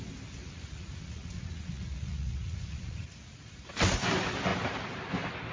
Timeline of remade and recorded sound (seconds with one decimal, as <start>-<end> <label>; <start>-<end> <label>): 0.0-0.4 recorded; 0.4-3.7 remade; 3.7-5.5 recorded